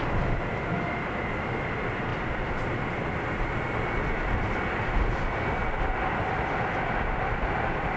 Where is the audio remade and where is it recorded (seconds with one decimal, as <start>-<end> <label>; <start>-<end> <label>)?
0.0-8.0 recorded